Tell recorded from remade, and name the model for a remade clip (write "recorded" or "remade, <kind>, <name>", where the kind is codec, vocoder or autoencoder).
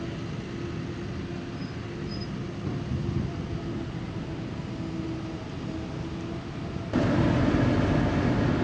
recorded